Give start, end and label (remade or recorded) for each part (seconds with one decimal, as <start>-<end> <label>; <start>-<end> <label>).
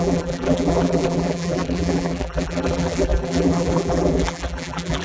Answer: 0.0-5.0 remade